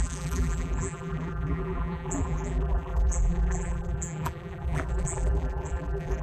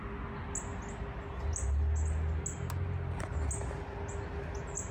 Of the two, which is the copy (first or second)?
first